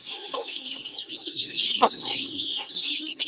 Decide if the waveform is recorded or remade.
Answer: remade